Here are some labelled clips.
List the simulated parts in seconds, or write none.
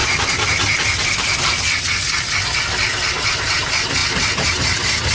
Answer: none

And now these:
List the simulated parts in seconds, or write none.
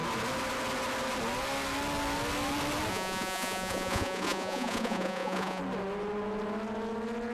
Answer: 2.9-5.6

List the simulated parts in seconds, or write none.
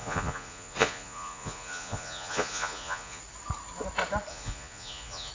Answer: 0.0-3.2; 4.3-5.3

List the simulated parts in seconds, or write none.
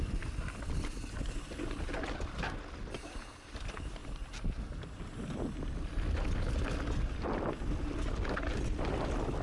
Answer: none